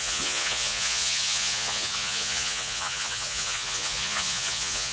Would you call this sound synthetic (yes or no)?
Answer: yes